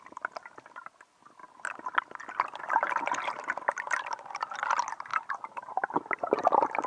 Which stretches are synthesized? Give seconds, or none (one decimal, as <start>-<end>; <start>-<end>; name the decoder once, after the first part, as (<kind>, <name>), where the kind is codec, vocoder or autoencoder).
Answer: none